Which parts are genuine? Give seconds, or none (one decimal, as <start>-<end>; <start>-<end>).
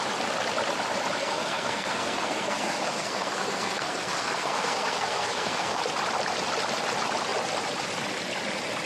0.0-1.2; 5.8-8.8